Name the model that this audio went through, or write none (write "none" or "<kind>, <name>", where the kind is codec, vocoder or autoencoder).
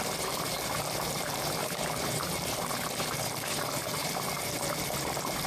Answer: vocoder, BigVGAN v2